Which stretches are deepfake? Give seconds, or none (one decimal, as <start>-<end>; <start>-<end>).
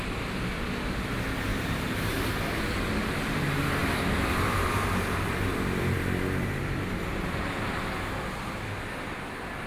1.5-3.4; 3.8-7.8